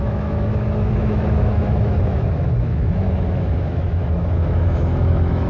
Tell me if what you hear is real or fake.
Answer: fake